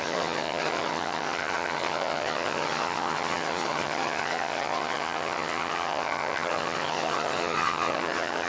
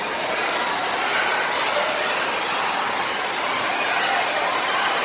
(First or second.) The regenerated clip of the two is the first